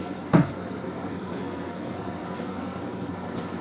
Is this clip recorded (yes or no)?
no